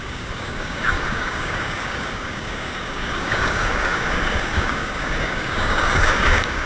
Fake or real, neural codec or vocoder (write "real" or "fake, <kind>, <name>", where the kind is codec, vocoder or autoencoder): fake, codec, DAC